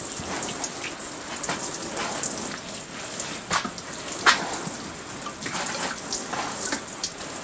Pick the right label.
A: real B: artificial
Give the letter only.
A